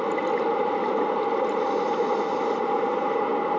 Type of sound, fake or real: real